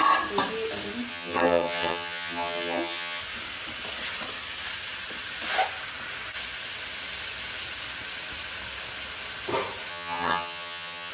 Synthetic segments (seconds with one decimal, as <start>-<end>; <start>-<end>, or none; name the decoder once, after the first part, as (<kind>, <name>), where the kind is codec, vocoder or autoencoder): 1.1-3.2 (vocoder, HiFi-GAN); 9.9-11.1